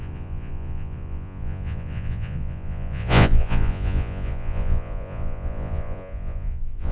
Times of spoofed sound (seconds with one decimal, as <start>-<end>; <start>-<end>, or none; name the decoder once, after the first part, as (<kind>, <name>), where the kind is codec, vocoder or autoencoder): 0.0-6.9 (vocoder, Vocos)